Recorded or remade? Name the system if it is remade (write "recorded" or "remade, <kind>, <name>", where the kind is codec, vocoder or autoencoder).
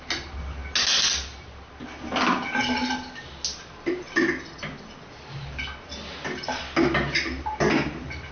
recorded